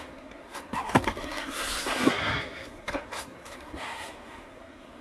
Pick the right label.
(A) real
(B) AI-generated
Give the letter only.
B